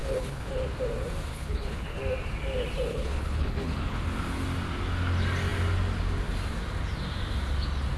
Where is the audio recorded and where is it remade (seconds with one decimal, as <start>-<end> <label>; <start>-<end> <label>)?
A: 0.0-0.5 remade; 0.5-1.3 recorded; 1.3-2.0 remade; 2.0-2.9 recorded; 2.9-4.0 remade; 4.0-8.0 recorded